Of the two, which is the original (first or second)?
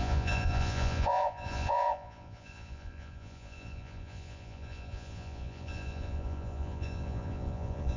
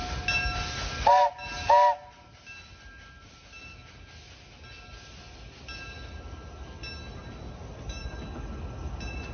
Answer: second